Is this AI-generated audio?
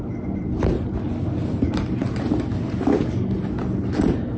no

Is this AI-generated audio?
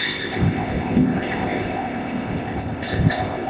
yes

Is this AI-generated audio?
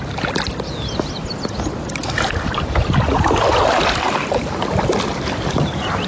no